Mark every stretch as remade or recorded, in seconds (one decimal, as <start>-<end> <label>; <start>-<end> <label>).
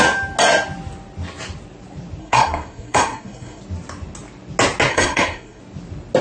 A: 0.0-2.2 recorded; 2.2-3.6 remade; 3.6-4.9 recorded; 4.9-5.6 remade; 5.6-6.2 recorded